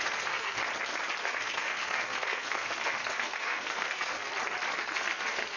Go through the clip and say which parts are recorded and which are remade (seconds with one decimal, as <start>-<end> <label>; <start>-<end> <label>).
0.0-0.6 remade; 0.6-1.2 recorded; 1.2-4.3 remade; 4.3-4.8 recorded; 4.8-5.6 remade